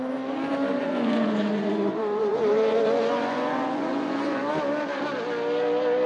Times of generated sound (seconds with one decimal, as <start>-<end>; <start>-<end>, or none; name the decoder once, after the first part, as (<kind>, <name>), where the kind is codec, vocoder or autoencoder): 0.8-4.5 (vocoder, Vocos)